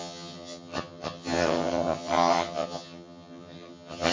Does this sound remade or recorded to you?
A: remade